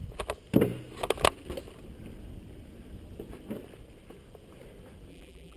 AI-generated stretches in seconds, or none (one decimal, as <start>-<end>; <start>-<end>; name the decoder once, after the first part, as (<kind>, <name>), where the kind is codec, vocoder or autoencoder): 5.1-5.6 (vocoder, BigVGAN v2)

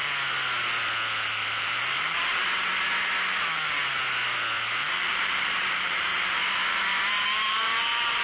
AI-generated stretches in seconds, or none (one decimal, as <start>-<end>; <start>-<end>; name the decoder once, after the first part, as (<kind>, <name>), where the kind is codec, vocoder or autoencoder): 1.6-2.7 (vocoder, BigVGAN v2); 5.0-8.2

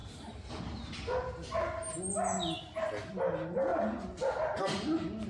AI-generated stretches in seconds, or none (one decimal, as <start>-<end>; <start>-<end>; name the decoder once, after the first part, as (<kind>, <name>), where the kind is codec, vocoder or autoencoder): 0.0-0.6 (vocoder, BigVGAN v2); 3.7-5.3

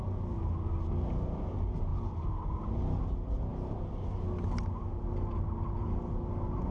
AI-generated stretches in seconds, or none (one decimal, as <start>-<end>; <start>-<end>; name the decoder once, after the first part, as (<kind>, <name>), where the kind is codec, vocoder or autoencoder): none

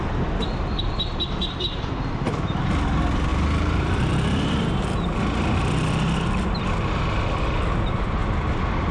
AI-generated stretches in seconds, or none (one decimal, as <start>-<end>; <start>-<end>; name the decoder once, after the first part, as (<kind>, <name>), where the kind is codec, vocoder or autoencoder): 3.3-4.6 (vocoder, BigVGAN v2); 8.2-8.9